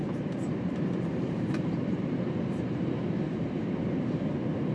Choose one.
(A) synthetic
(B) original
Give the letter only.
A